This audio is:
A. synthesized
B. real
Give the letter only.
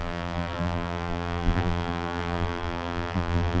A